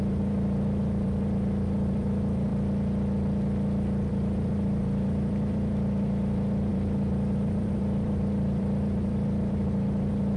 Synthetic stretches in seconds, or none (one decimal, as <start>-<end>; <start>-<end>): 0.0-2.5; 4.1-10.4